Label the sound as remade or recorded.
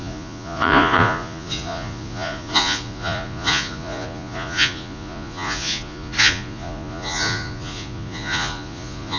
remade